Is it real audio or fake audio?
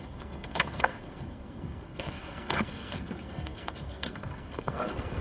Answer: fake